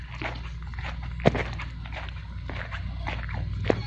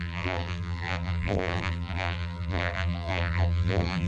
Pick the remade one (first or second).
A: second